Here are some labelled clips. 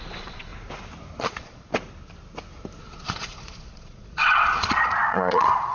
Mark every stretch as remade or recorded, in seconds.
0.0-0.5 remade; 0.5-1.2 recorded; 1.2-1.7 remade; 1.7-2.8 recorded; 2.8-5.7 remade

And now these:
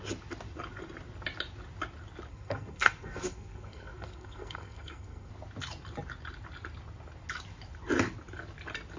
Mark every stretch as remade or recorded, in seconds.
0.0-2.3 recorded; 2.3-5.3 remade; 5.3-9.0 recorded

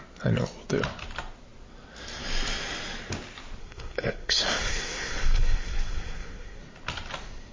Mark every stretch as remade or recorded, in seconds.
0.0-3.6 recorded; 3.6-6.6 remade; 6.6-7.5 recorded